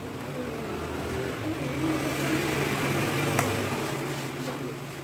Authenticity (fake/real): real